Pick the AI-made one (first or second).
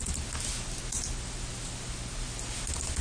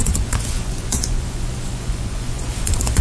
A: second